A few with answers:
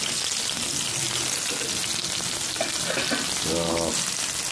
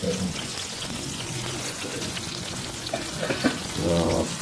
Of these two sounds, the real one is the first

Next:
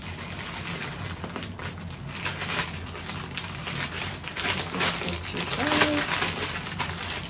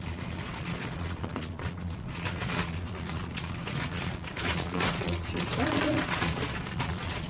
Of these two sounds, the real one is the first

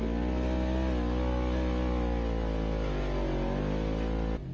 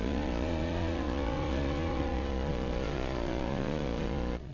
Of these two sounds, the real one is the first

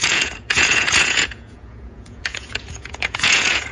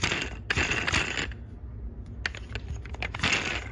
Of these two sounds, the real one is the second